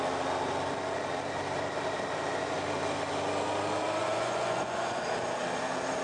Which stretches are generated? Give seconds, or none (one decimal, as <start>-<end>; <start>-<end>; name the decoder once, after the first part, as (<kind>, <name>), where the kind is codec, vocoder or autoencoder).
4.0-5.0 (vocoder, Vocos)

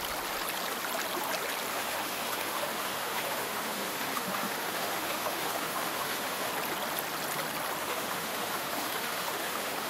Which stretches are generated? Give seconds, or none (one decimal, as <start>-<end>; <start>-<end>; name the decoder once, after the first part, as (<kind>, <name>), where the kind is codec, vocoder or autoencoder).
1.7-6.5 (autoencoder, DAC-VAE); 7.8-9.9

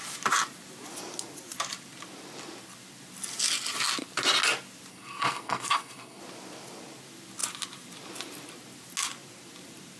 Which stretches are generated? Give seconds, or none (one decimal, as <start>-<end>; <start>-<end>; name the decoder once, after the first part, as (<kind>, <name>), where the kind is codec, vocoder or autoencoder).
4.9-6.2 (codec, SNAC)

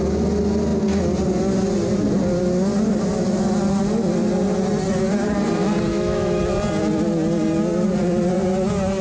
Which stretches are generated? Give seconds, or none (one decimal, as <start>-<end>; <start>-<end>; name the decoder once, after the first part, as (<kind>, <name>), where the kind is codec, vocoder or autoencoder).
5.9-6.4 (autoencoder, DAC-VAE)

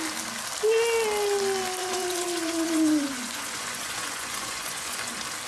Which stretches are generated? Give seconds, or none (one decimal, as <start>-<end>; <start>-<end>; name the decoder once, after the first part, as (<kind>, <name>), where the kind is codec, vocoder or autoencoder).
1.8-5.1 (vocoder, Vocos)

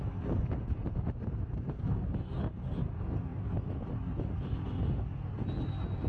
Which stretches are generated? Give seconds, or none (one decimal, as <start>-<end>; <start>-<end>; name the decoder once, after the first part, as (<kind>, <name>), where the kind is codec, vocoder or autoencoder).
none